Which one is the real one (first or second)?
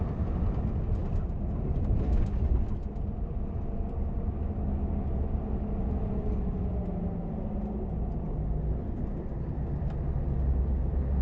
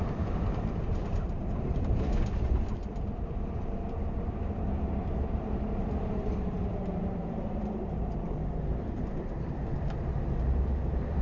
first